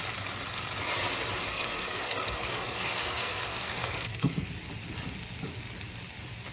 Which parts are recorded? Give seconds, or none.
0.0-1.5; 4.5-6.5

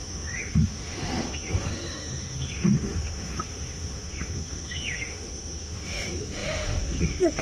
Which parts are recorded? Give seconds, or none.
none

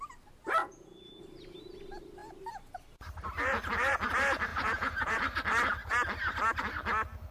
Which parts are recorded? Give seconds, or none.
0.0-0.6; 1.2-4.5; 5.2-7.3